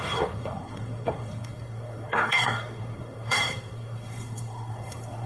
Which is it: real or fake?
fake